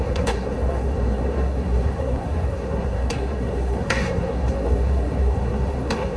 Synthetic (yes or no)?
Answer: yes